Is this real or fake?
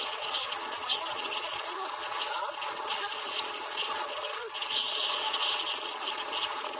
fake